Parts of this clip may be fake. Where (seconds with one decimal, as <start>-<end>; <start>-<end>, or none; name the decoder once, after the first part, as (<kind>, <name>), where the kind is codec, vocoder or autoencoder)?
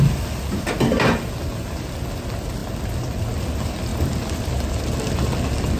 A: none